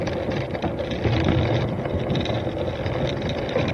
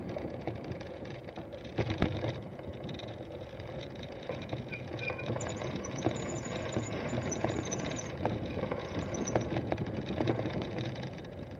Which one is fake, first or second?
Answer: second